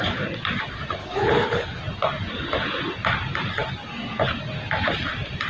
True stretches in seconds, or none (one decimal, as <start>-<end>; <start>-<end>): 0.0-1.0; 1.8-5.5